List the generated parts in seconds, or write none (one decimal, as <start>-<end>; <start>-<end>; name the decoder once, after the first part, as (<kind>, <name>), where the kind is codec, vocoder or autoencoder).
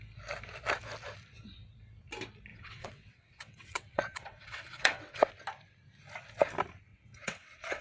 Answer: 2.5-5.3 (vocoder, WaveNeXt); 6.9-7.8